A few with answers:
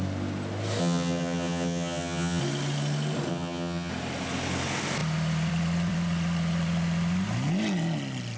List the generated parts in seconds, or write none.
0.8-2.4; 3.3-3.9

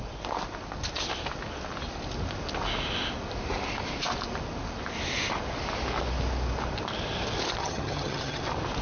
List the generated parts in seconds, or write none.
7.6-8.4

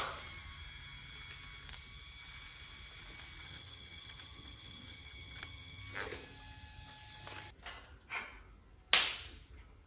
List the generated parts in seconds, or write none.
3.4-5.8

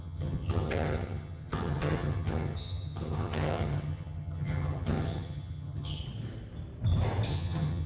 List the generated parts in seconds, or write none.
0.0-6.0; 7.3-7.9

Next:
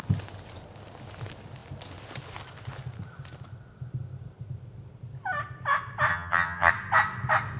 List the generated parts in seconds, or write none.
6.1-6.7